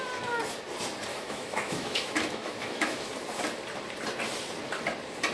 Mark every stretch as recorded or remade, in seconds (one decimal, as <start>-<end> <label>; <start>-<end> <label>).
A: 0.0-1.1 recorded; 1.1-3.1 remade; 3.1-5.3 recorded

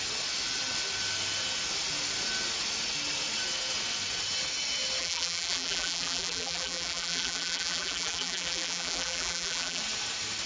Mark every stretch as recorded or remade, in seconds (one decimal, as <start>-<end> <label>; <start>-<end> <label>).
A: 0.0-5.0 recorded; 5.0-9.8 remade; 9.8-10.5 recorded